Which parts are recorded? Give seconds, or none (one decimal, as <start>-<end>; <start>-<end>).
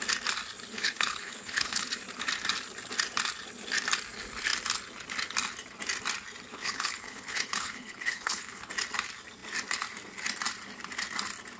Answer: 0.0-0.7; 2.0-6.5; 8.7-11.6